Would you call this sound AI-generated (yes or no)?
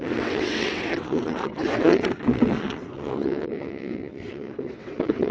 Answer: yes